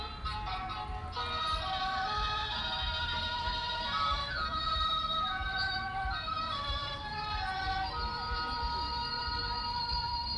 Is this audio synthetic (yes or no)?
no